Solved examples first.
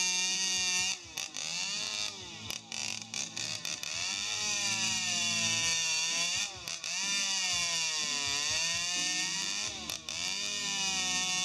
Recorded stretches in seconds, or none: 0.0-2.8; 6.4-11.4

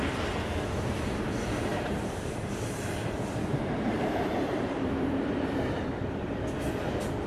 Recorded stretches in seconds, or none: 0.0-1.7; 2.9-3.5; 4.9-7.3